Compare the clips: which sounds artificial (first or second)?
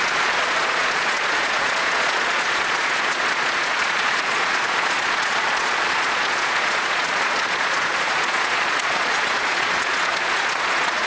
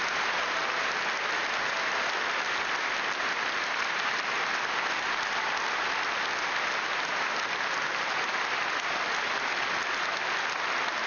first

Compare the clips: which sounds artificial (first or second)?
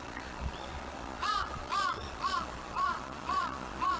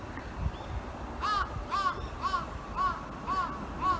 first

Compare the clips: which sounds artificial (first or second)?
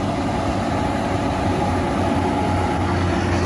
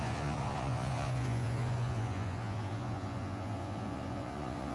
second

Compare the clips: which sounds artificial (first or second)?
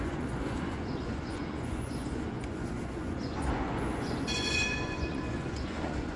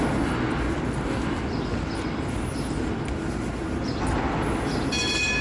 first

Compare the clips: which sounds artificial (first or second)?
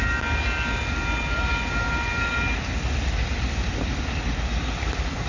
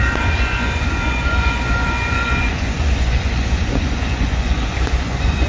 second